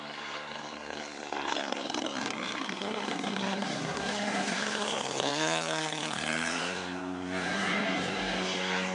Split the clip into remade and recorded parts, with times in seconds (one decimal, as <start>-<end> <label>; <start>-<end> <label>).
0.0-8.9 remade